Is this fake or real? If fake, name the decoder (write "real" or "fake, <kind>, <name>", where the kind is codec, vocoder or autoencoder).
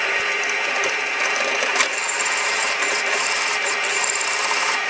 fake, vocoder, BigVGAN v2